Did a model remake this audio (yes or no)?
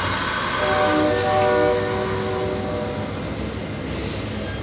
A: no